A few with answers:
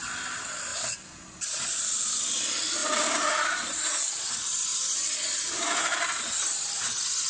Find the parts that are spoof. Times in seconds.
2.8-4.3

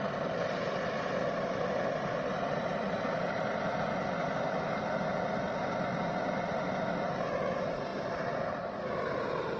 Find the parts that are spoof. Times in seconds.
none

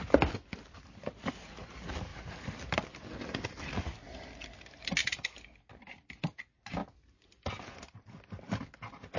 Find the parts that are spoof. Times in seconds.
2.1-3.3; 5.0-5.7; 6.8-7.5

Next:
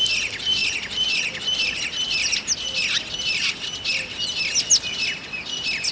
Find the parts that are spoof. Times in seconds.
none

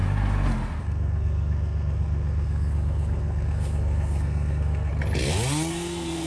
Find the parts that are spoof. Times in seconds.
0.8-4.9; 5.7-6.3

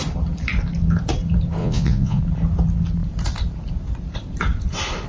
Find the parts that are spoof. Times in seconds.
1.6-2.2